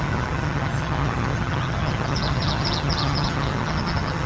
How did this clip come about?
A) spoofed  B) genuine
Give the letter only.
A